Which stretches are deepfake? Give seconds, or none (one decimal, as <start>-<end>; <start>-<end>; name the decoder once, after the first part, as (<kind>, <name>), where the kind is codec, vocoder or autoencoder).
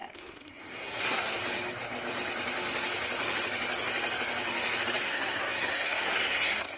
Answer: 0.0-1.4 (codec, SNAC); 5.0-6.8